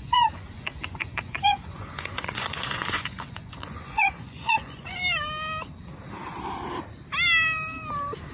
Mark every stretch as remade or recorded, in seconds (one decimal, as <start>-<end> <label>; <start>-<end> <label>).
0.0-5.0 remade; 5.0-8.3 recorded

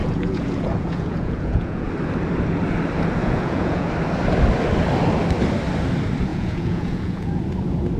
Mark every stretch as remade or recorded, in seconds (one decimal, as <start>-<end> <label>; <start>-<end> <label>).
0.0-1.9 remade; 1.9-3.2 recorded; 3.2-3.9 remade; 3.9-6.3 recorded; 6.3-7.4 remade; 7.4-8.0 recorded

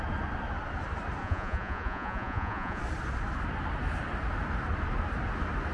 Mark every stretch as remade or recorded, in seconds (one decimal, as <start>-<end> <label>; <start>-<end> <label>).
0.0-1.2 recorded; 1.2-2.8 remade; 2.8-5.7 recorded

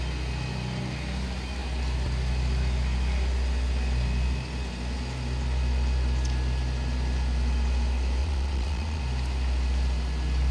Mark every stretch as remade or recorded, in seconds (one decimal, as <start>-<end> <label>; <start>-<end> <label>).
0.0-8.2 recorded; 8.2-9.0 remade; 9.0-10.5 recorded

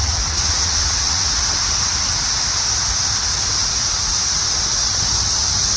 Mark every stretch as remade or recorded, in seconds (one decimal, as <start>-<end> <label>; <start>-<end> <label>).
0.0-1.4 remade; 1.4-3.6 recorded; 3.6-4.1 remade; 4.1-5.8 recorded

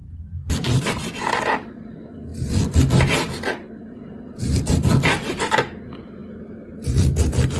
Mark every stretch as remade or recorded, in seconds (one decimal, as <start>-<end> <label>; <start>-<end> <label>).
0.0-7.6 recorded

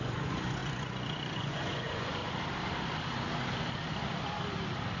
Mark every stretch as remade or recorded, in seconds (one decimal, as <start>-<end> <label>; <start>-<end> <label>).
0.0-2.2 remade; 2.2-5.0 recorded